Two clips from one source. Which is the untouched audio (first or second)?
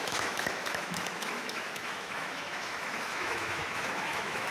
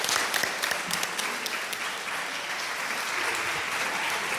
second